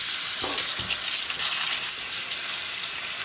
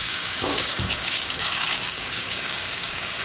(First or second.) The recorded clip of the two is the first